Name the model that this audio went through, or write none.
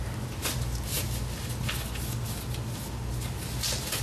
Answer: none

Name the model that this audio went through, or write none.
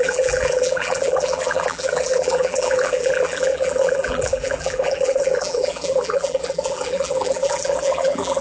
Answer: vocoder, BigVGAN v2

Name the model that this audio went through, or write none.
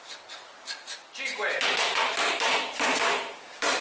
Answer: none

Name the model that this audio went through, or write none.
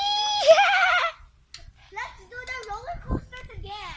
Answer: none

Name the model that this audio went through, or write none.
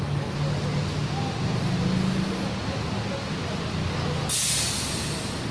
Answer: none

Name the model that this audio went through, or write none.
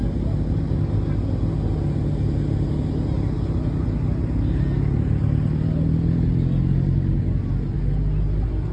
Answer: none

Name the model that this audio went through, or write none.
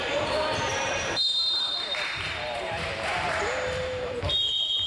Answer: vocoder, BigVGAN v2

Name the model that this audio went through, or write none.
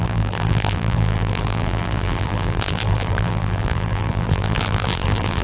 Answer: vocoder, BigVGAN v2